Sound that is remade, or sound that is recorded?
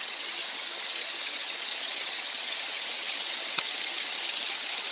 remade